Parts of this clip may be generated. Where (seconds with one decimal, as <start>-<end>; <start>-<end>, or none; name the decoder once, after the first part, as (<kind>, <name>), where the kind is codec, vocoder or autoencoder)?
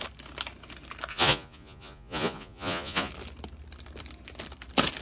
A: 1.1-3.1 (vocoder, Vocos)